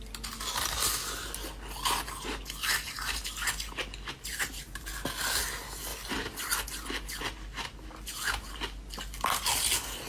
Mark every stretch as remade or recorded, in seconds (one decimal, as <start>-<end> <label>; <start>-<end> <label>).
0.0-4.3 recorded; 4.3-4.9 remade; 4.9-10.1 recorded